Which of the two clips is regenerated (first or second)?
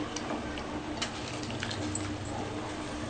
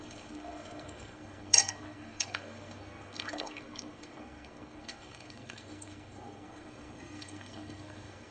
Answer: second